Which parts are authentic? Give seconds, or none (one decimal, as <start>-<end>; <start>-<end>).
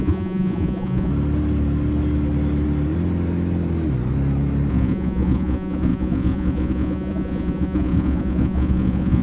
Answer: 1.1-4.7